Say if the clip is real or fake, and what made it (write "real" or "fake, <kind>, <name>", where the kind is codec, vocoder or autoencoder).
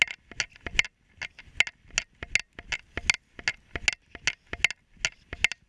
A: real